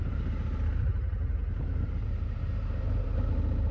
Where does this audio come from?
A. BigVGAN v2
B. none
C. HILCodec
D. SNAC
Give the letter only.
B